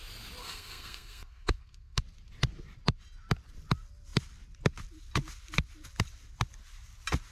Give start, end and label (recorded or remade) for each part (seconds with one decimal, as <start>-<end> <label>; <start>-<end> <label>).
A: 0.0-0.4 recorded; 0.4-2.0 remade; 2.0-7.3 recorded